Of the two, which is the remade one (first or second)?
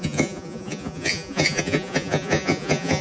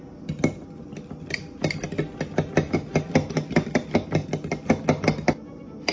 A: first